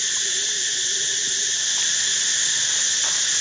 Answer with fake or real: real